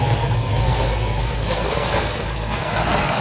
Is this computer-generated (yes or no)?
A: yes